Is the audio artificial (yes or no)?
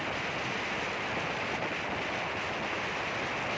no